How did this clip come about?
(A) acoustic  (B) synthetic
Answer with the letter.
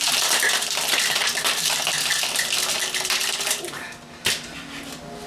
A